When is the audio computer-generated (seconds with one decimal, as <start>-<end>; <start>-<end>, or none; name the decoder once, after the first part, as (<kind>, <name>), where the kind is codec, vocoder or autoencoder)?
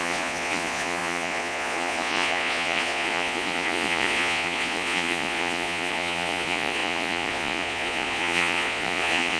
0.0-9.4 (vocoder, Vocos)